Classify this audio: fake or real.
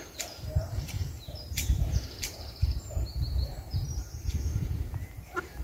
fake